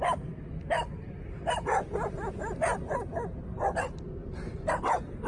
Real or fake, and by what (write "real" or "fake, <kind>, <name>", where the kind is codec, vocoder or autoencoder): fake, vocoder, BigVGAN v2